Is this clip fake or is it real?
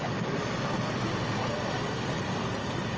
real